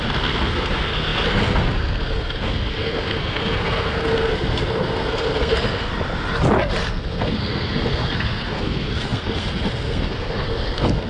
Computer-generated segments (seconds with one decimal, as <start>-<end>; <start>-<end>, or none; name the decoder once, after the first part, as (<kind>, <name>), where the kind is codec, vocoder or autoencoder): 0.0-5.9 (codec, SNAC); 6.9-11.1